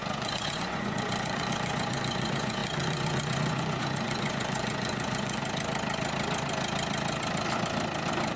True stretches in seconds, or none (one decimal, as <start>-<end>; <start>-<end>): 5.4-8.4

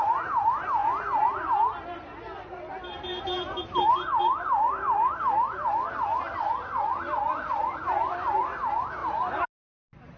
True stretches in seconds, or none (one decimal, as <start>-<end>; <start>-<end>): 0.0-10.2

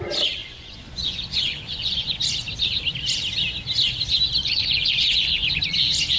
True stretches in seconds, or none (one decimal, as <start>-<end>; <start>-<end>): 0.0-0.4; 2.2-4.4; 5.6-6.2